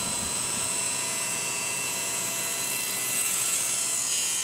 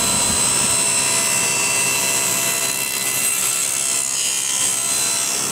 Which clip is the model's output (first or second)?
first